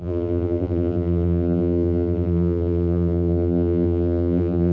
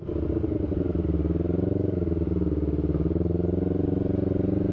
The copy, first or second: first